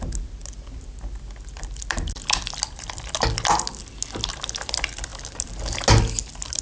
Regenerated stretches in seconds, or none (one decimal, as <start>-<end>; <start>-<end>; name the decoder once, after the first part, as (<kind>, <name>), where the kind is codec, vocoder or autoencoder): none